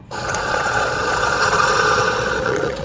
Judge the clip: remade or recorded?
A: remade